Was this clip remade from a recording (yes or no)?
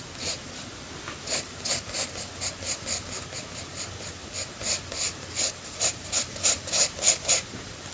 no